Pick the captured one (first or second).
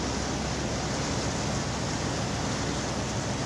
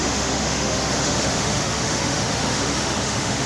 first